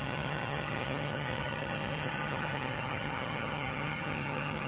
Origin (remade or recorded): remade